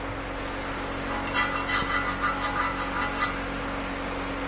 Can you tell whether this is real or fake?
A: real